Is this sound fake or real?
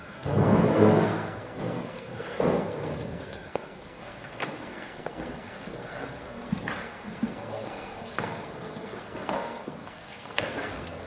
fake